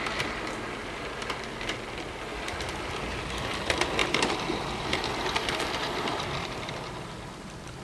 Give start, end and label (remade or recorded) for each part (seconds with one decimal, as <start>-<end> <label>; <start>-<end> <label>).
0.0-4.0 recorded; 4.0-4.9 remade; 4.9-5.4 recorded; 5.4-7.2 remade; 7.2-7.8 recorded

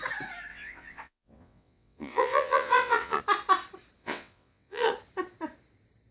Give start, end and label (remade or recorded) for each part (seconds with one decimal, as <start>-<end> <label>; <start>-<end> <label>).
0.0-0.5 recorded; 0.5-3.2 remade; 3.2-4.0 recorded; 4.0-4.9 remade; 4.9-6.1 recorded

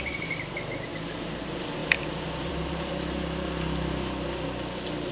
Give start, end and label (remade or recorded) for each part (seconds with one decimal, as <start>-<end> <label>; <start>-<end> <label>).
0.0-1.8 recorded; 1.8-2.7 remade; 2.7-5.1 recorded

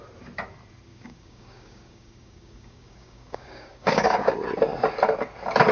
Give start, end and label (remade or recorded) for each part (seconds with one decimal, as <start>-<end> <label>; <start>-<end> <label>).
0.0-0.9 recorded; 0.9-4.3 remade; 4.3-5.7 recorded